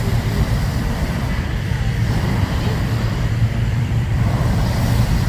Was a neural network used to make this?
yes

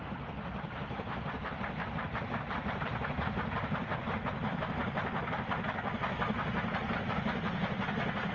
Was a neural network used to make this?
no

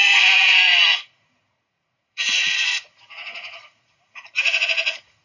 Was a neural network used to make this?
yes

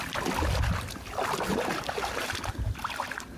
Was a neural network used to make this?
no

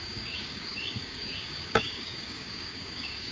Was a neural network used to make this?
yes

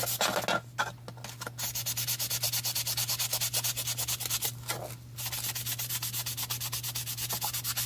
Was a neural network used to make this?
no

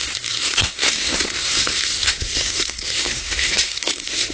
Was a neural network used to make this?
yes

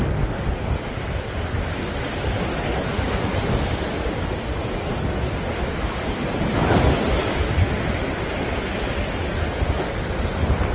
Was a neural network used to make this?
no